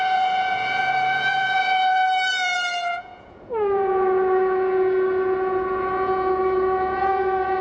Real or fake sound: fake